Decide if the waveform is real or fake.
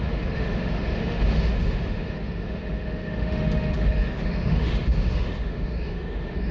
fake